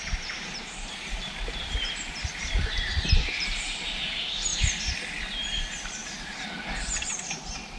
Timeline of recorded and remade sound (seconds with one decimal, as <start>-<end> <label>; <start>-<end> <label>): 0.0-4.5 remade; 4.5-5.6 recorded; 5.6-6.0 remade; 6.0-7.0 recorded; 7.0-7.8 remade